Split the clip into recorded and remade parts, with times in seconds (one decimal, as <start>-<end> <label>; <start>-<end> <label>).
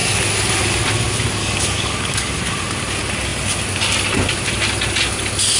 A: 0.0-1.4 recorded; 1.4-2.4 remade; 2.4-5.6 recorded